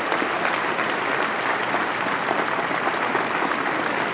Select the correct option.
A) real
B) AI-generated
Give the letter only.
A